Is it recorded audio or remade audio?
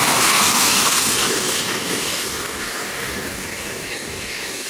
remade